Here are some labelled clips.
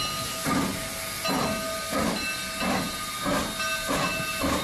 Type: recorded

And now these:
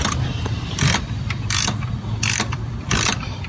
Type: remade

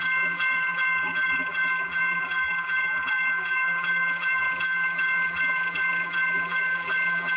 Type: remade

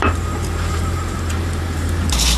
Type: remade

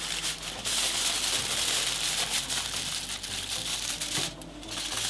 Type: recorded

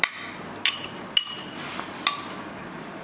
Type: recorded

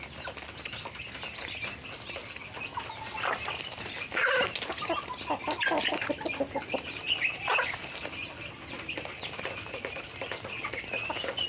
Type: recorded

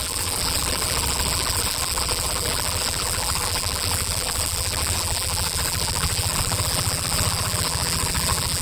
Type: remade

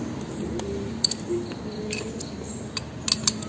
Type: recorded